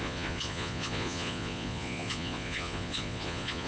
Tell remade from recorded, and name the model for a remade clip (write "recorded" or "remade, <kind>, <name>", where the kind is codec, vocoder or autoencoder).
remade, vocoder, Vocos